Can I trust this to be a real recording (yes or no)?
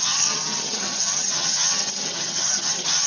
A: no